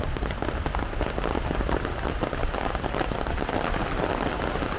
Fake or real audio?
real